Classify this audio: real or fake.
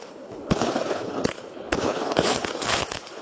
fake